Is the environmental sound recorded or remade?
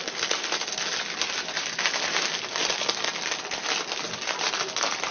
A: recorded